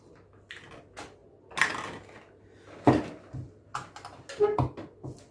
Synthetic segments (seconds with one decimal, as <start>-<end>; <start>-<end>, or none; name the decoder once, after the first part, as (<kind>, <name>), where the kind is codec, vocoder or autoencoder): none